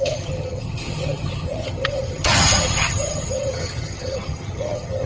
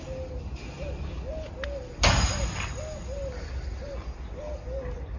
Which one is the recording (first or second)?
second